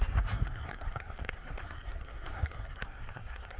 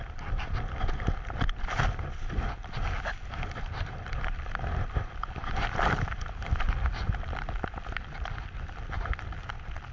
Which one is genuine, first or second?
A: second